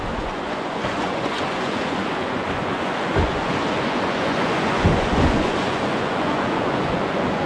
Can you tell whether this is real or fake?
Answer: fake